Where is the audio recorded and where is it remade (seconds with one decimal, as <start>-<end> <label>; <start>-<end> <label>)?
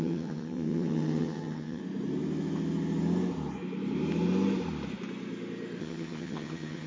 0.0-1.8 remade; 1.8-5.8 recorded; 5.8-6.9 remade